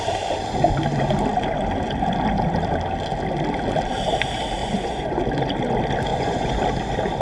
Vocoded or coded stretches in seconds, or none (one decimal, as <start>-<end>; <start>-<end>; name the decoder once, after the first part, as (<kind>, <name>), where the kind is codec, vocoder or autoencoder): 4.6-5.2 (vocoder, Vocos); 6.1-6.6